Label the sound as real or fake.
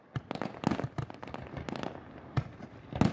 real